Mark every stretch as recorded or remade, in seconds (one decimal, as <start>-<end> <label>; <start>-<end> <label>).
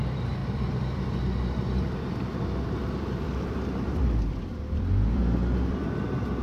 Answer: 0.0-5.2 remade; 5.2-5.7 recorded; 5.7-6.4 remade